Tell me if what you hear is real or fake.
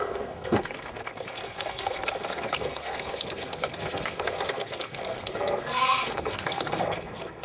fake